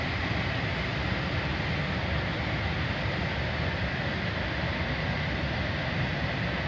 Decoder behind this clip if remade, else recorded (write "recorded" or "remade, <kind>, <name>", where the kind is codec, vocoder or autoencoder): recorded